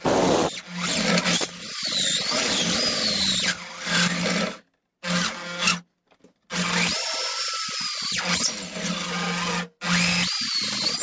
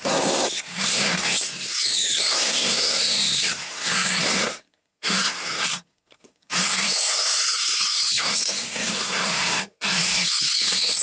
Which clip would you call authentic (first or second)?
first